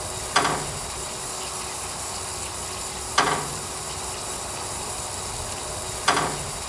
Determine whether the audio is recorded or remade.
recorded